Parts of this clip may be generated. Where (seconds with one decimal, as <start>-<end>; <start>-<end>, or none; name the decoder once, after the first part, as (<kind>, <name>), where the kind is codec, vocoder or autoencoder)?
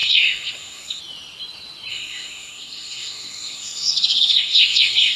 0.0-1.0 (codec, SNAC); 1.9-5.2